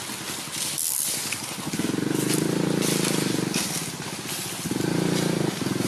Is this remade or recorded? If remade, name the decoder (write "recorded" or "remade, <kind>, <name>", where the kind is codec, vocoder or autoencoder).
recorded